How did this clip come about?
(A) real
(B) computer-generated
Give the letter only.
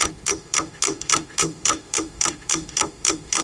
B